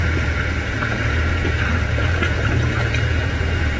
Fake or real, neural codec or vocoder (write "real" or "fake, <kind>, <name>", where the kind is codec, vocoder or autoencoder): fake, vocoder, Vocos